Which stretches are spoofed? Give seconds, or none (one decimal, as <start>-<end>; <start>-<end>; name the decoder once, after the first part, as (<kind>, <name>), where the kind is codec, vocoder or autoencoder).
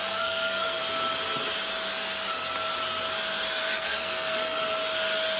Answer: 0.0-0.8 (codec, SNAC); 3.6-4.6